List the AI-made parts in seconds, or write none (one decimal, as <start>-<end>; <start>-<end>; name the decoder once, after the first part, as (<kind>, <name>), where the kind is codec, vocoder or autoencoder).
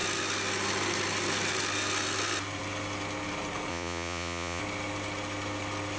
3.7-4.6 (vocoder, Vocos)